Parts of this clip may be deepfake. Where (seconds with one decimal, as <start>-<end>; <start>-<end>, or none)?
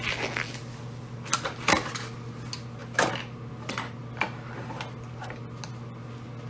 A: none